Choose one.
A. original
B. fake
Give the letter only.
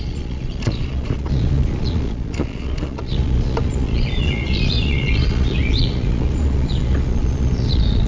B